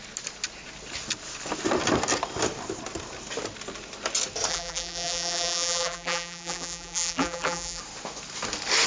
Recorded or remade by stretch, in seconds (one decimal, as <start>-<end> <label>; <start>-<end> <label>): 0.0-4.5 recorded; 4.5-7.8 remade; 7.8-8.9 recorded